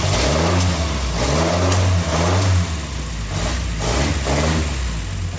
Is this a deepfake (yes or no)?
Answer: no